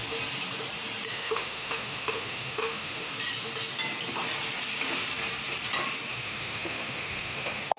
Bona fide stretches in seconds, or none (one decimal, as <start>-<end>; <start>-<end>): 0.0-1.1; 3.1-6.1